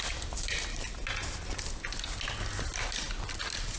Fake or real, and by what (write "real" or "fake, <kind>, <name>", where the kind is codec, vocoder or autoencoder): real